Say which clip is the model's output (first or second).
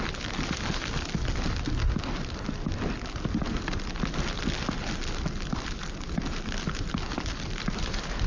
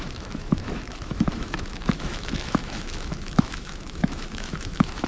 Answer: second